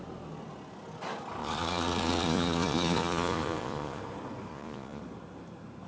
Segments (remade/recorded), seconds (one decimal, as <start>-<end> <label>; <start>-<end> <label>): 0.0-1.4 recorded; 1.4-4.0 remade; 4.0-4.5 recorded; 4.5-5.0 remade; 5.0-5.9 recorded